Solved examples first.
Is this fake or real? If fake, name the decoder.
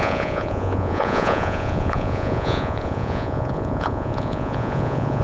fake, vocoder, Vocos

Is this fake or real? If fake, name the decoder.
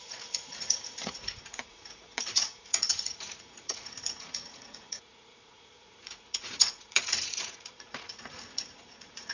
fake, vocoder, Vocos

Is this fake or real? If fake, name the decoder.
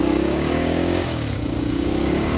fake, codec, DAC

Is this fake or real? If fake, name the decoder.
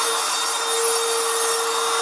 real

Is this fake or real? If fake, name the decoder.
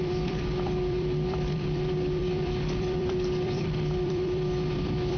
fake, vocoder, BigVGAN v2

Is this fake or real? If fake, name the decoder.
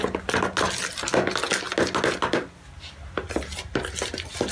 real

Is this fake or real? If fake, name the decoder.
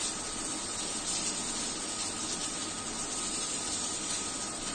real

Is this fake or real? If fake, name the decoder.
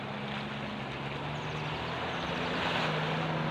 real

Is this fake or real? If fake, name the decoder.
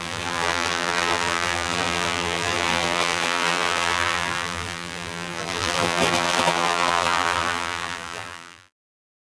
fake, vocoder, BigVGAN v2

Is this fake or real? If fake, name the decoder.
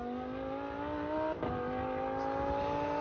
real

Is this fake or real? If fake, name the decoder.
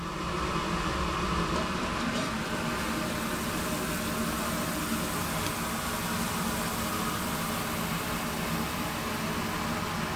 real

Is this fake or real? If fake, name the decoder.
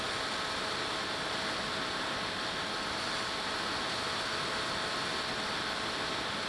real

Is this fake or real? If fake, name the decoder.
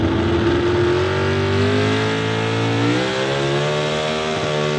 real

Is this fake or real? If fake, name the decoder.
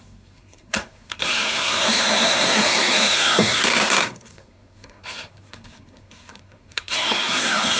fake, codec, SNAC